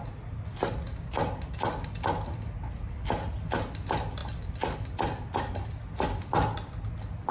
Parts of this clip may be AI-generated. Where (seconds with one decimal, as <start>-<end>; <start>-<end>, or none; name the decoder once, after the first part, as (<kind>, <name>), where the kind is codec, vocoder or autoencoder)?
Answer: none